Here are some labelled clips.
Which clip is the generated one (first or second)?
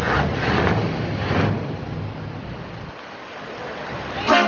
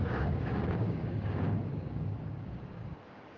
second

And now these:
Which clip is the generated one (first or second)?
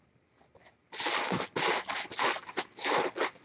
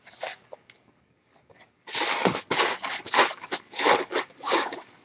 second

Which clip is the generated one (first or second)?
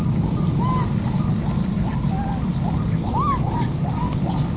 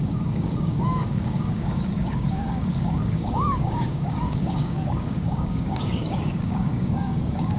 second